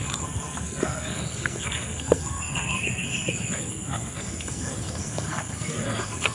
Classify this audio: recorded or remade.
remade